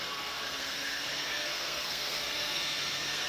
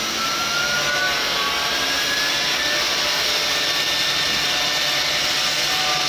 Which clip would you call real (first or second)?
second